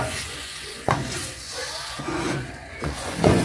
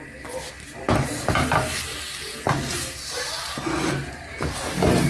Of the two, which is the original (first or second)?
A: second